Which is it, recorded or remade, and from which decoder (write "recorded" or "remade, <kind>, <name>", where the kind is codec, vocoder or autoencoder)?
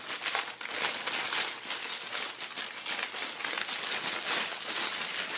recorded